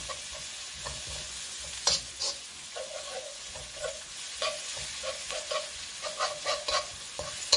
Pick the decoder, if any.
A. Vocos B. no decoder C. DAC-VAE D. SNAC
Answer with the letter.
A